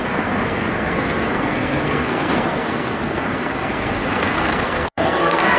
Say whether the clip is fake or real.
fake